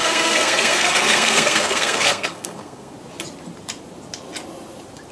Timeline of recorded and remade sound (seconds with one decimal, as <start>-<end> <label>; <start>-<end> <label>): 0.0-2.9 remade; 2.9-5.1 recorded